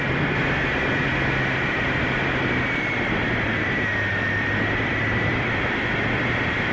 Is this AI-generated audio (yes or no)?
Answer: yes